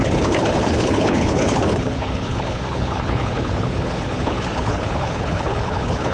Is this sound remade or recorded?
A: remade